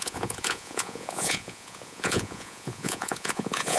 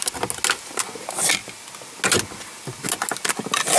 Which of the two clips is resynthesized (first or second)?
first